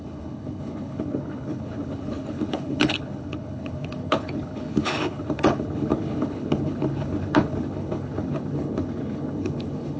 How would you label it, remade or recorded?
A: remade